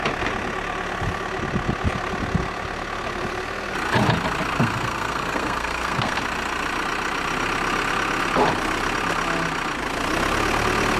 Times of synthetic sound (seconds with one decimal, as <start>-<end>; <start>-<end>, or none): 4.6-6.2